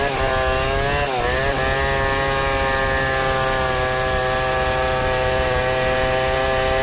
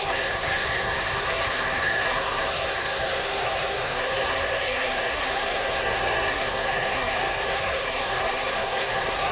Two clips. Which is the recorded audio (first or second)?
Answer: first